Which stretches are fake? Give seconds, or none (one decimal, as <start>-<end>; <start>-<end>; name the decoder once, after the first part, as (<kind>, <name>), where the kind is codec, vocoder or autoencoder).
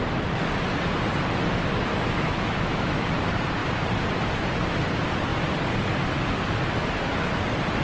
1.9-3.1 (autoencoder, DAC-VAE)